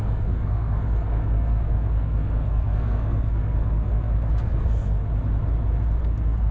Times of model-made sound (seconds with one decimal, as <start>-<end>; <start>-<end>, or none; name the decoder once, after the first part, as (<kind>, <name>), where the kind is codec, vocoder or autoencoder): 0.0-5.0 (codec, SNAC); 6.0-6.5